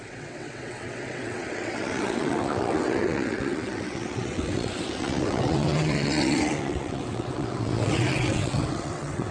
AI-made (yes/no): yes